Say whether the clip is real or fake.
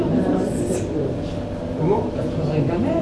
real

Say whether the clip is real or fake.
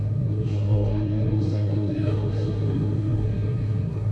fake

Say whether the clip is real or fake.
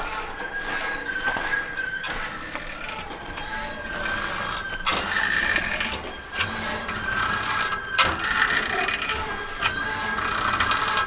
real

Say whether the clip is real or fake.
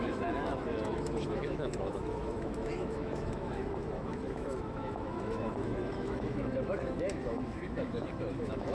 fake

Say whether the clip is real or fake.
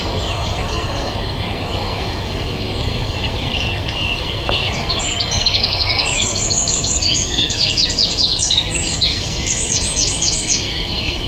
fake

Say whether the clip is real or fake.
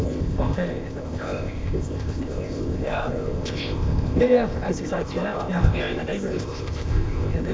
fake